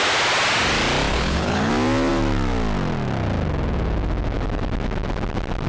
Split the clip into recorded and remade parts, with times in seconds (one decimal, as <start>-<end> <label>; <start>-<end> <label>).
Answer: 0.0-1.1 recorded; 1.1-1.7 remade; 1.7-5.7 recorded